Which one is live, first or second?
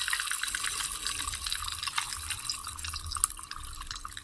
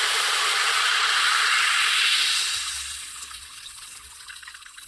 first